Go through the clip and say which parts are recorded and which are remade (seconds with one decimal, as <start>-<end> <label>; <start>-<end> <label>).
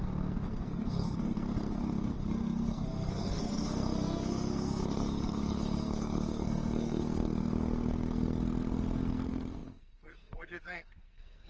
0.0-11.5 remade